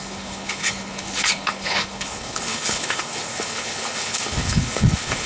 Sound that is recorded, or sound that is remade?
remade